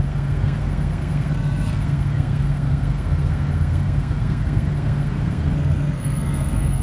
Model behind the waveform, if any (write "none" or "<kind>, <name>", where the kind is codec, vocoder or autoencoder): codec, SNAC